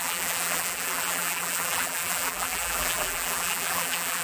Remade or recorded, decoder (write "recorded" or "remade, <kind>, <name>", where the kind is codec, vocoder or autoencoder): remade, vocoder, BigVGAN v2